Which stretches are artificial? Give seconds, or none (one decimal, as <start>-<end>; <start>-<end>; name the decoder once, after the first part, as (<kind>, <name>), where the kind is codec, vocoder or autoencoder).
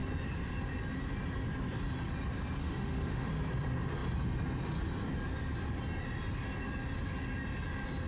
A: 2.6-3.3 (autoencoder, DAC-VAE)